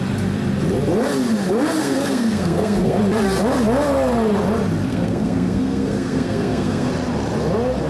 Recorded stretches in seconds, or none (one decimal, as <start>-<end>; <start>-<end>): 0.0-1.8; 3.0-4.9; 6.9-7.9